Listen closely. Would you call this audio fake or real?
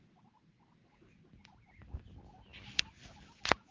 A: real